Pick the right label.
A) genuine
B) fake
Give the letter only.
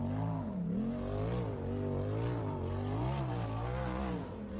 A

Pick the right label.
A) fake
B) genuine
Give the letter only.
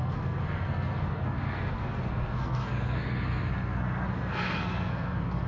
A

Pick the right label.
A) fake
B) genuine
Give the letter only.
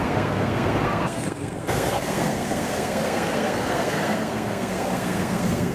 A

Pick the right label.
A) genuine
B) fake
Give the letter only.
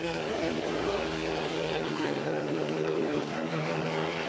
B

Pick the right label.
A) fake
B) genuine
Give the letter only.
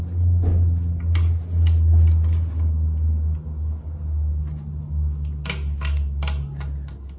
B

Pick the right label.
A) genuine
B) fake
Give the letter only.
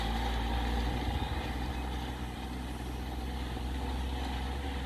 A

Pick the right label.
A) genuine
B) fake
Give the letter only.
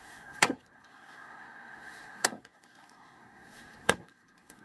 B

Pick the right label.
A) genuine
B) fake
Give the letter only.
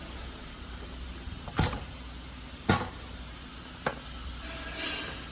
A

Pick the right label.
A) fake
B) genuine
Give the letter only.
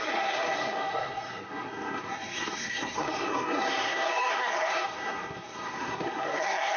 A